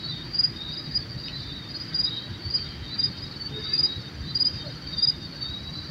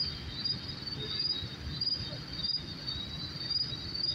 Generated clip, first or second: first